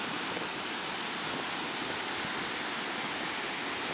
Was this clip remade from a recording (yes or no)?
no